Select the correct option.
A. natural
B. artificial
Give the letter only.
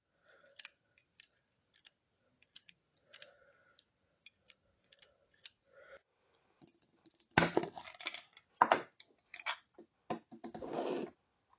A